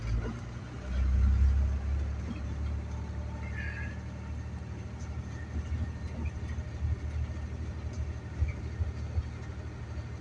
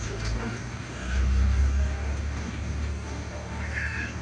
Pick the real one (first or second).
first